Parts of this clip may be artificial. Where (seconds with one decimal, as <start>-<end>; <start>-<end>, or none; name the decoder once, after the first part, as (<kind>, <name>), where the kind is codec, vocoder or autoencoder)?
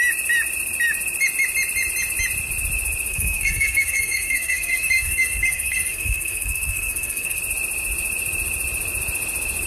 3.1-7.4 (codec, SNAC)